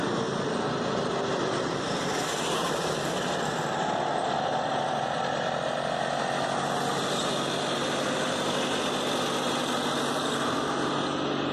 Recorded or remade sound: recorded